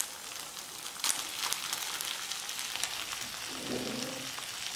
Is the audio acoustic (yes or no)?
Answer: yes